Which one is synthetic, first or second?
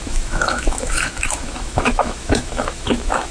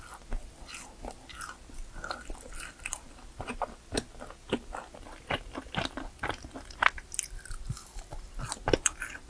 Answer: first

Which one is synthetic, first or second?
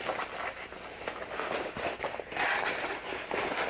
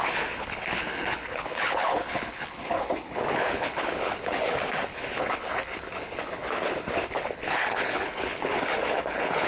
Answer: second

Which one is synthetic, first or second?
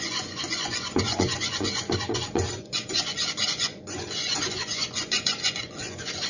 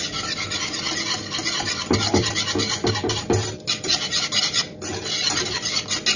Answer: first